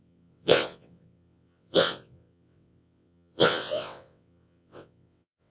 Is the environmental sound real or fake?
fake